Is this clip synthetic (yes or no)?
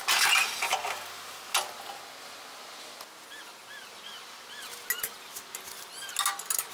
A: no